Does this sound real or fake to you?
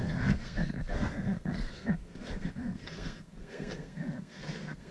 fake